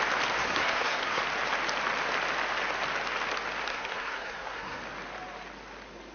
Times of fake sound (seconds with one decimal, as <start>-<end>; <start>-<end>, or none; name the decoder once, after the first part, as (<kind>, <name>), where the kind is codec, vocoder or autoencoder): 0.4-1.2 (codec, SNAC); 3.7-4.8